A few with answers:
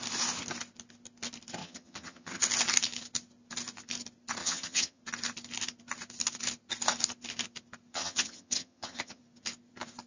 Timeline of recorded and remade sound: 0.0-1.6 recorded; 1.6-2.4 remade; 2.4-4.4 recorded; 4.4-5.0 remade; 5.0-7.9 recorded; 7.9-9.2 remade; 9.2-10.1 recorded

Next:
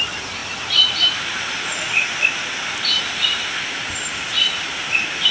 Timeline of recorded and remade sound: 0.0-5.3 recorded

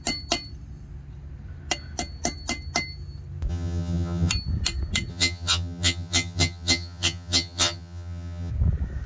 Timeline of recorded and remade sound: 0.0-3.5 recorded; 3.5-4.3 remade; 4.3-5.1 recorded; 5.1-8.5 remade; 8.5-9.1 recorded

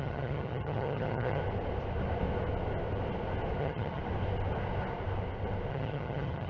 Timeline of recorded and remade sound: 0.0-1.4 remade; 1.4-3.6 recorded; 3.6-4.0 remade; 4.0-5.7 recorded; 5.7-6.5 remade